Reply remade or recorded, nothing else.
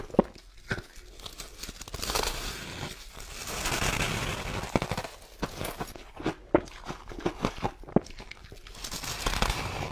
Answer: recorded